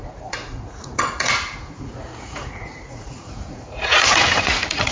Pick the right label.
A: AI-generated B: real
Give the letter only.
A